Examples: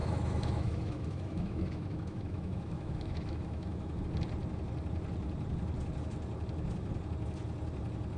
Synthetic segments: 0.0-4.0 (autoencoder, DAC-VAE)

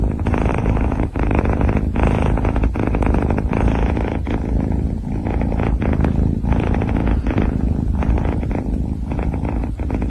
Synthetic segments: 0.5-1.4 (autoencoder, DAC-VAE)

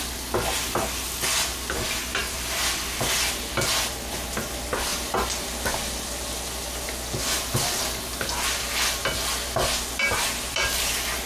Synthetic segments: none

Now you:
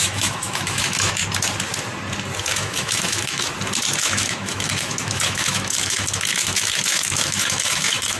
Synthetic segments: 0.0-1.2 (autoencoder, DAC-VAE); 2.5-3.5; 4.0-8.2

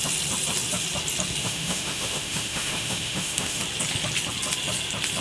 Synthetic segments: 1.4-3.6 (autoencoder, DAC-VAE)

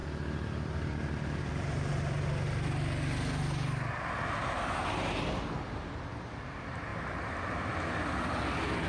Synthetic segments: none

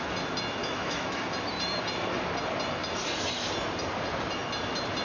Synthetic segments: 0.6-1.2 (autoencoder, DAC-VAE)

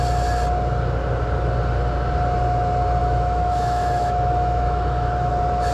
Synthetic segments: 3.0-5.3 (autoencoder, DAC-VAE)